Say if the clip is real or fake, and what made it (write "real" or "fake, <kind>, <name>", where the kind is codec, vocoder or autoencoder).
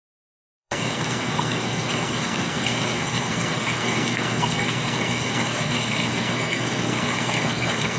fake, codec, SNAC